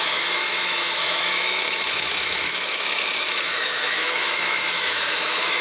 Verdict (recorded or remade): remade